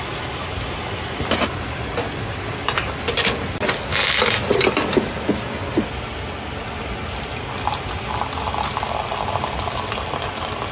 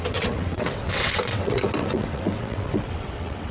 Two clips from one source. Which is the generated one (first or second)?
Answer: second